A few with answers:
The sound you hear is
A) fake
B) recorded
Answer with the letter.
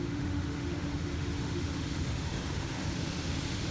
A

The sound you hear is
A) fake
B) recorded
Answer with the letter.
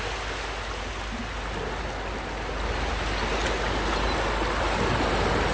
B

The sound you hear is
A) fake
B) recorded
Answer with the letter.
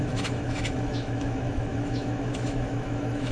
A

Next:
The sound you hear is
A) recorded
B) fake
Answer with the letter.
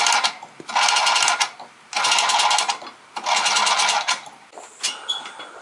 A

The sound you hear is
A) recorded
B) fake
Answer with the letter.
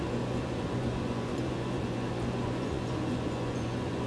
B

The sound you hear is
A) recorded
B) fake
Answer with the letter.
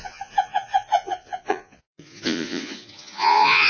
B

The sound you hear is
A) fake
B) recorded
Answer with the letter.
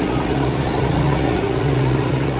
A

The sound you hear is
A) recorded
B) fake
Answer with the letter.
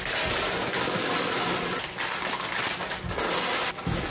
A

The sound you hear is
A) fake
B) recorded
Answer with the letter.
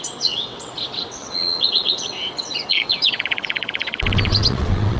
A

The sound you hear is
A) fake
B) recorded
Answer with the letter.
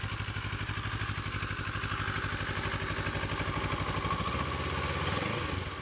B